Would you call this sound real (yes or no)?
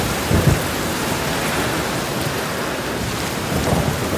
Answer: yes